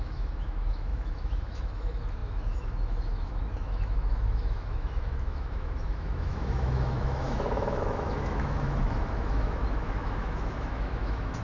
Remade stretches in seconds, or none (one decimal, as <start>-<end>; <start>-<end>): 0.0-11.4